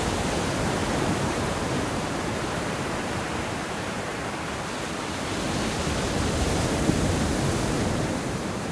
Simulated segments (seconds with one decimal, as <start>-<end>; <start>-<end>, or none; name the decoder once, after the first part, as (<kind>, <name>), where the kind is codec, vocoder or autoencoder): 0.8-4.2 (vocoder, BigVGAN v2)